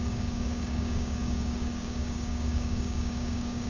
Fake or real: fake